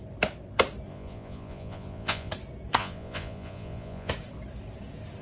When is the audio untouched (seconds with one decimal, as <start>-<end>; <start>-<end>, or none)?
0.0-0.9; 2.3-2.8; 4.1-5.2